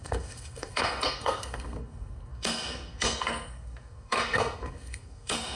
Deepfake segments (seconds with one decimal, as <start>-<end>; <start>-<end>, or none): 0.0-5.6